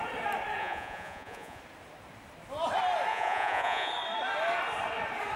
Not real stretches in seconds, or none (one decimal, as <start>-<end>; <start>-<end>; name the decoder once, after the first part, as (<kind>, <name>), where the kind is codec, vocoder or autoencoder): 0.6-1.6 (vocoder, Vocos); 3.1-3.9